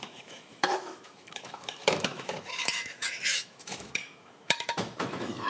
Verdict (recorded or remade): remade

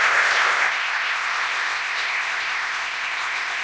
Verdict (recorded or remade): remade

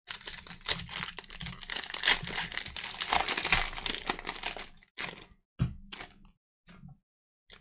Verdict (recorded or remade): recorded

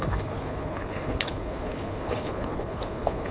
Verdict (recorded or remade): remade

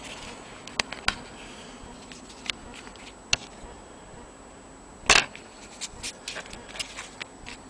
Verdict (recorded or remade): recorded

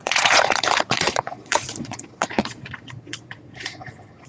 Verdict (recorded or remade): remade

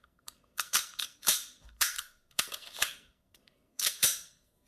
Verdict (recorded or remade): remade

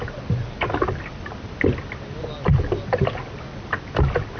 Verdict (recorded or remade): recorded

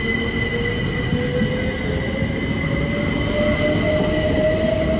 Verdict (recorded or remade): recorded